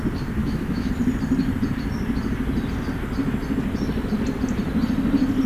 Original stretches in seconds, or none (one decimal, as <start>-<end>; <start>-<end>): 0.0-0.4; 0.9-5.5